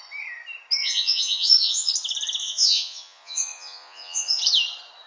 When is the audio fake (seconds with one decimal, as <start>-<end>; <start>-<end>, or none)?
0.8-1.9; 2.4-4.4